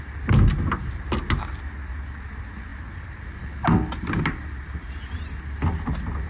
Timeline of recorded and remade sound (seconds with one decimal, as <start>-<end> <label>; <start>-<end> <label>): 0.0-6.3 recorded